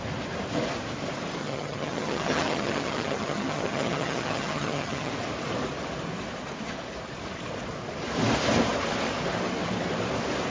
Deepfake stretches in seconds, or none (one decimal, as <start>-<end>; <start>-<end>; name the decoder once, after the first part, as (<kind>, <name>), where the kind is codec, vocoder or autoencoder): 1.4-5.1 (vocoder, HiFi-GAN)